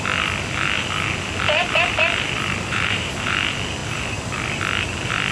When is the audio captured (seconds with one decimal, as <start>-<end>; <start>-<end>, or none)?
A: 0.0-2.5; 3.1-5.3